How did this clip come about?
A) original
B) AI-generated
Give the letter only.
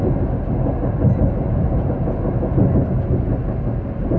A